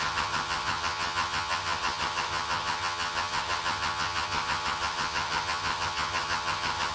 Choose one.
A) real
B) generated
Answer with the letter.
B